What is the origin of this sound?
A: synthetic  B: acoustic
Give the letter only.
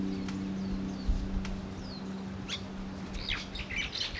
B